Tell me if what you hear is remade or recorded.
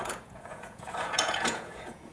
remade